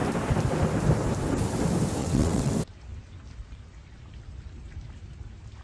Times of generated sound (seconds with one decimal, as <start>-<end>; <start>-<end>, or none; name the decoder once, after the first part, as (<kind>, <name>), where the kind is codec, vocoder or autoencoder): 2.0-2.5 (vocoder, WaveNeXt)